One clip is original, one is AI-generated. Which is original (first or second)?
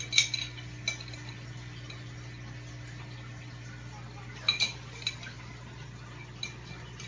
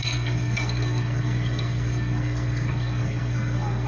first